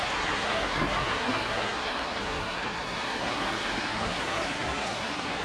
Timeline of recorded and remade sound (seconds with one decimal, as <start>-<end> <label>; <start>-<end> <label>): 0.0-5.4 remade